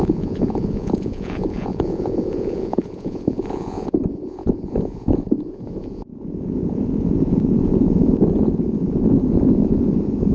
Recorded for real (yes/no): no